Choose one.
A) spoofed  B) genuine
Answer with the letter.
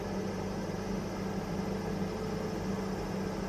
B